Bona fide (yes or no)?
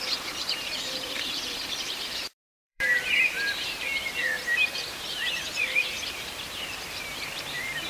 no